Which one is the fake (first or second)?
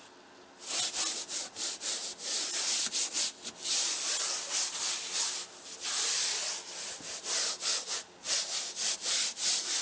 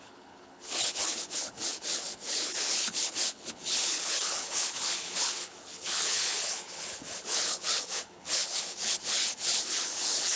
second